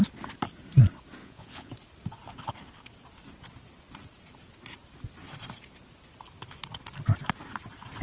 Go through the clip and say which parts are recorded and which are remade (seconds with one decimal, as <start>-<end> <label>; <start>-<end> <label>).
0.0-1.2 recorded; 1.2-1.7 remade; 1.7-8.0 recorded